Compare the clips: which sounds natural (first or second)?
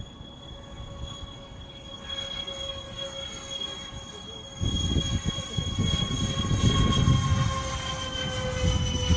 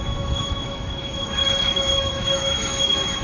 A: first